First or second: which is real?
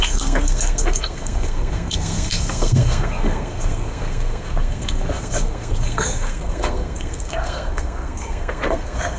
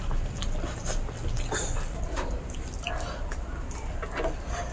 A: second